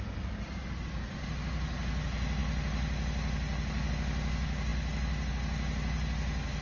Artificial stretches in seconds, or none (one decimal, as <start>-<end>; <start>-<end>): none